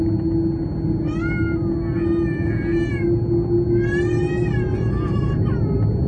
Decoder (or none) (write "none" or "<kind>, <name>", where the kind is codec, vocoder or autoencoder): none